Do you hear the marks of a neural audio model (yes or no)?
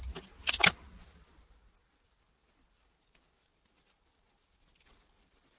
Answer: yes